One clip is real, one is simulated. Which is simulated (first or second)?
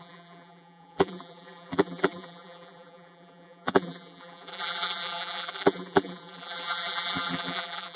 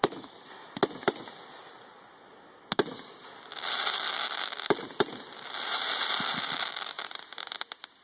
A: first